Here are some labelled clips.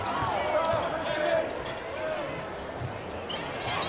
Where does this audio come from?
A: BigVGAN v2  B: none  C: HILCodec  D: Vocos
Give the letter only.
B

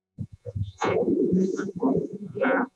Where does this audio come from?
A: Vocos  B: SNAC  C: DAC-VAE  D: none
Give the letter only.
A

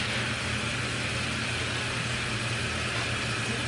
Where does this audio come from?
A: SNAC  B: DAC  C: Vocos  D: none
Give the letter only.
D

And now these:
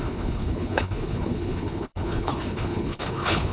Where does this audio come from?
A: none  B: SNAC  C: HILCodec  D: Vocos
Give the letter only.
C